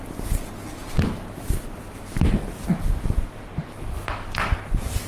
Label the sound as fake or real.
real